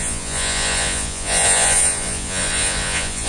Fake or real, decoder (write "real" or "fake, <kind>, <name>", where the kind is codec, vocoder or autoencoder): fake, vocoder, Vocos